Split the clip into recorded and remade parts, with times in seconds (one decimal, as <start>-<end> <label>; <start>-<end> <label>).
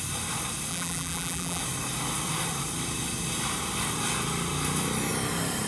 0.0-0.7 recorded; 0.7-1.6 remade; 1.6-5.7 recorded